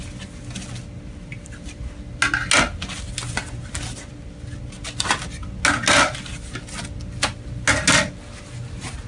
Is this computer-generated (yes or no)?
no